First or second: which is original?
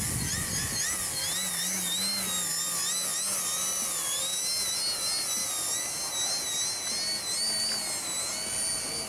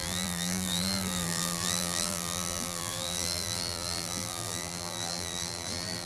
first